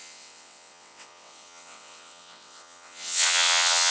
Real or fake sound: fake